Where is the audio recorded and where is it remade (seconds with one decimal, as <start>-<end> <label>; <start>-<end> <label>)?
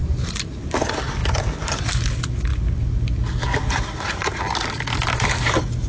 0.0-0.6 remade; 0.6-1.2 recorded; 1.2-1.8 remade; 1.8-5.9 recorded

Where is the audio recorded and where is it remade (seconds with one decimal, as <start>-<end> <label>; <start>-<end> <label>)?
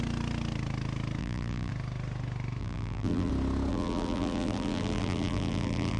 0.0-1.2 recorded; 1.2-1.7 remade; 1.7-2.6 recorded; 2.6-3.3 remade; 3.3-3.7 recorded; 3.7-6.0 remade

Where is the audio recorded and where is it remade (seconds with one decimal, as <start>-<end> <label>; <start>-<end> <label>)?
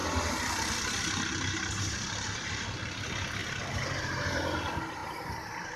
0.0-1.8 recorded; 1.8-3.4 remade; 3.4-4.4 recorded; 4.4-5.0 remade; 5.0-5.8 recorded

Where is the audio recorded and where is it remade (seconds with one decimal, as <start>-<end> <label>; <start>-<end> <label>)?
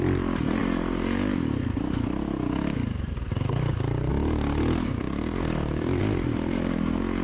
0.0-4.1 recorded; 4.1-6.0 remade; 6.0-7.2 recorded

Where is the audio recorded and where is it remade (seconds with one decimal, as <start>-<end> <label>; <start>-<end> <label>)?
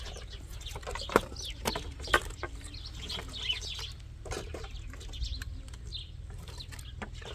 0.0-7.3 recorded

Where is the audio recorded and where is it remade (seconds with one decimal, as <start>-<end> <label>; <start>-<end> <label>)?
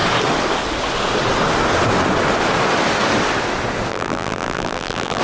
0.0-3.9 recorded; 3.9-5.2 remade